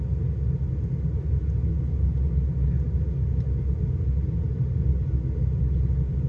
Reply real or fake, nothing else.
real